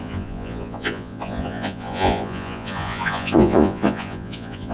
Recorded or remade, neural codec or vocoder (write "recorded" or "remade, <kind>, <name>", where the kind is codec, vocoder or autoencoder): remade, vocoder, Vocos